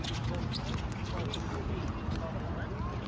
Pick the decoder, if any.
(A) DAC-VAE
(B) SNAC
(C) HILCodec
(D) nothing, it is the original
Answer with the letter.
D